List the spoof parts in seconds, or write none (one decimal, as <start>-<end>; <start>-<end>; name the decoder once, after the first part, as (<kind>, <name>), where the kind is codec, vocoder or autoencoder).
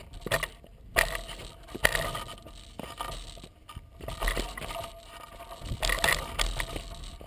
none